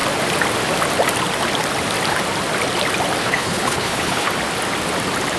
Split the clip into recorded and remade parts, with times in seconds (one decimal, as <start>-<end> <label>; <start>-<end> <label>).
0.0-3.2 recorded; 3.2-4.3 remade; 4.3-5.4 recorded